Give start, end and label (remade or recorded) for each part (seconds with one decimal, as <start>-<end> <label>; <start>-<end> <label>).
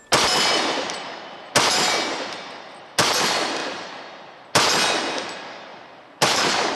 0.0-6.7 recorded